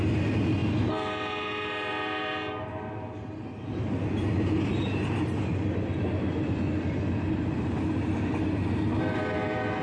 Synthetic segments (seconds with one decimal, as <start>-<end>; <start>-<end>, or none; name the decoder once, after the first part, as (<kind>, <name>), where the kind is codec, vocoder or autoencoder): none